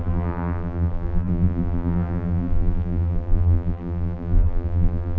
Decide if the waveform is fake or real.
fake